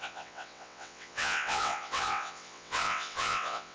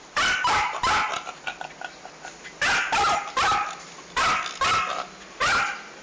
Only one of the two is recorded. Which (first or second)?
second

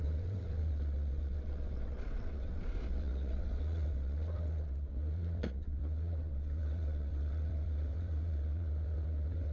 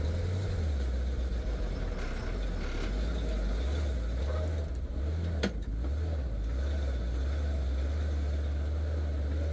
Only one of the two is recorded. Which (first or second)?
second